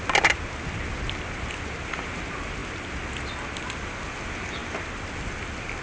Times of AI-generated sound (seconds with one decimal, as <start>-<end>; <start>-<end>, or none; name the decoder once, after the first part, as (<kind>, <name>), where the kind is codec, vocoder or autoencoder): none